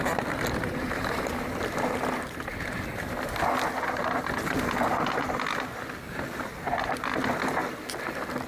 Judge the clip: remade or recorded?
recorded